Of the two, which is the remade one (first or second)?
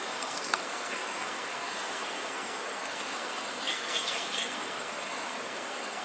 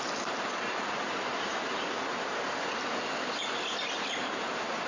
first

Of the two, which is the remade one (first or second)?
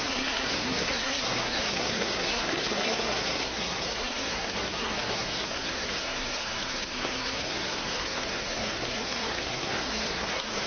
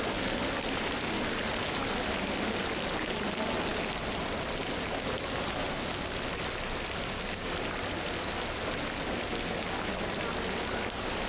first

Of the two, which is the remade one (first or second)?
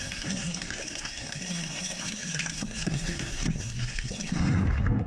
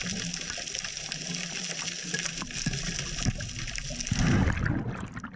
first